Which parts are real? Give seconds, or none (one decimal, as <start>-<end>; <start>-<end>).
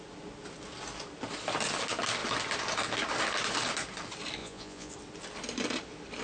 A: 0.0-4.4; 4.9-6.2